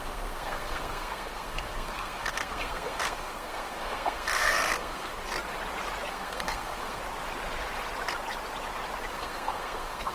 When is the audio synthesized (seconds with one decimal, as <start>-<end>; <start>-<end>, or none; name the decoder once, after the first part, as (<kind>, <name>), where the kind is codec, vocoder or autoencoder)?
0.0-5.1 (codec, SNAC); 6.1-7.0; 9.1-10.1